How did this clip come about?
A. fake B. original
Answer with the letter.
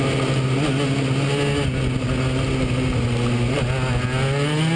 B